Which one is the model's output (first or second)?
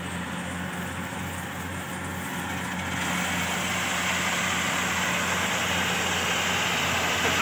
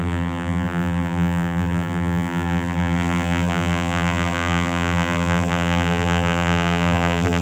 second